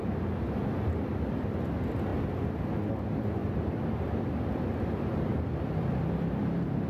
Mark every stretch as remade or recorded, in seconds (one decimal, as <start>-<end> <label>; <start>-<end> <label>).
0.0-6.9 recorded